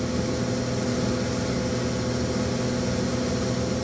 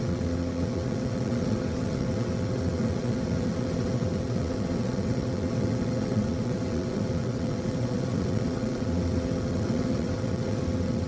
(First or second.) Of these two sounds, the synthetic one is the second